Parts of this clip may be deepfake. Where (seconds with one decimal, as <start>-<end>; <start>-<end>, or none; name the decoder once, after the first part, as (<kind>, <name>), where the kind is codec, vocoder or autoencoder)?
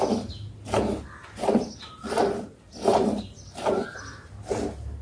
none